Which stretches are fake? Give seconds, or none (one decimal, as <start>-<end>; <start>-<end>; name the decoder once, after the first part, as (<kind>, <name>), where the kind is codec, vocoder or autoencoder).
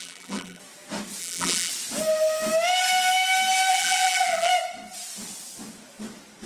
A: 0.0-0.6 (vocoder, BigVGAN v2); 1.2-1.7; 3.7-4.5